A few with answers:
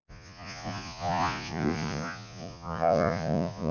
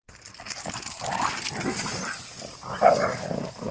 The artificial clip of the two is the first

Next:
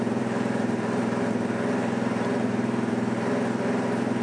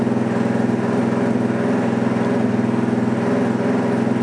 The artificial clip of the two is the first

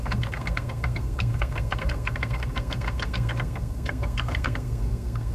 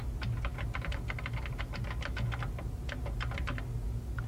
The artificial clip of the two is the first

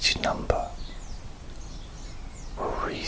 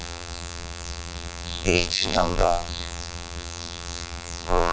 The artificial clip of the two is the second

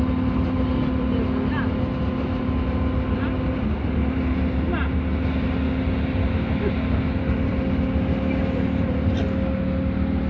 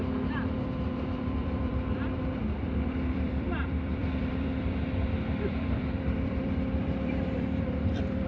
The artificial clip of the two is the second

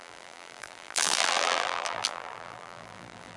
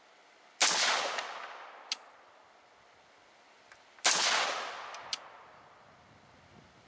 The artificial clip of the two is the first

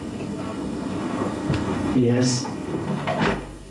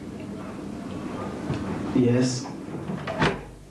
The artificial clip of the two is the first